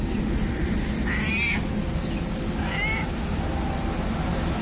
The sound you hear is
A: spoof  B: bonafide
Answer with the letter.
B